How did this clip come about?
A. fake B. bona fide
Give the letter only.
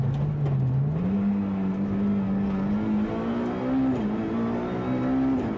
B